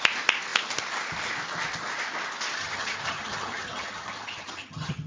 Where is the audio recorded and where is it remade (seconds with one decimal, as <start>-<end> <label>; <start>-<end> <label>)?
0.0-2.6 recorded; 2.6-5.1 remade